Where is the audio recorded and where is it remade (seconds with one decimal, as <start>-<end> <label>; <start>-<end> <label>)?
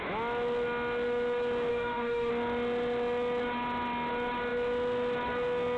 0.0-1.7 recorded; 1.7-2.3 remade; 2.3-5.8 recorded